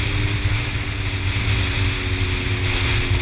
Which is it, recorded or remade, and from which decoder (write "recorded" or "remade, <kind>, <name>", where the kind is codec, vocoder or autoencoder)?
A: recorded